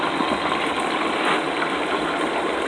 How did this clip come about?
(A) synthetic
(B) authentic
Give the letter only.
B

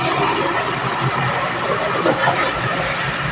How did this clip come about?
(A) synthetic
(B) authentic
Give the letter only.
B